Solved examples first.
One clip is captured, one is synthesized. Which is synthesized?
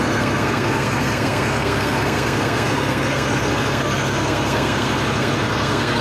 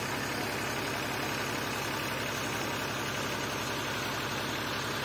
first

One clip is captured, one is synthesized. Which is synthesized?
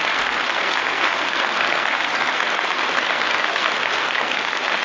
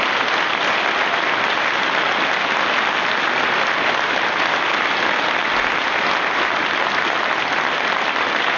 first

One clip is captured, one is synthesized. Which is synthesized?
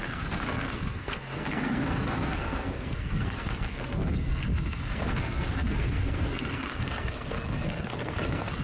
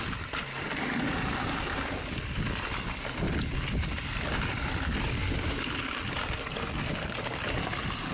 first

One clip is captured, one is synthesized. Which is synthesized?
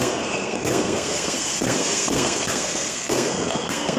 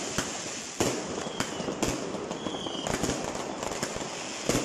first